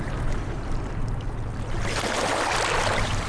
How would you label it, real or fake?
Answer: real